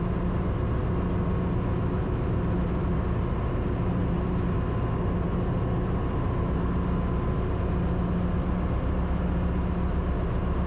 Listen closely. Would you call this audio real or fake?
real